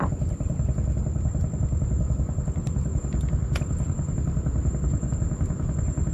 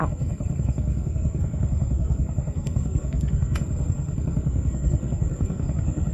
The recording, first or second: first